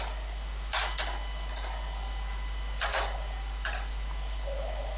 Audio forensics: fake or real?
real